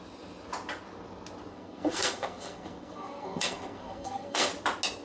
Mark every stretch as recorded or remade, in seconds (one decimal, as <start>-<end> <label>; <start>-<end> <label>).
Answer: 0.0-1.5 recorded; 1.5-4.5 remade; 4.5-5.0 recorded